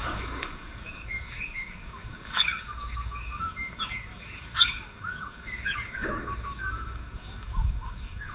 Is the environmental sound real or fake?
fake